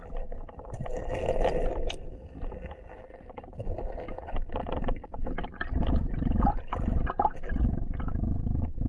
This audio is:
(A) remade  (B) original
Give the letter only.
B